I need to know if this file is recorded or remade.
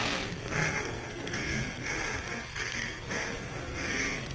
remade